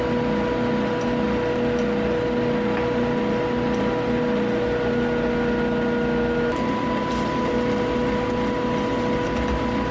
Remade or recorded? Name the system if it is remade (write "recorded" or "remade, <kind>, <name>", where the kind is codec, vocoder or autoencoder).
recorded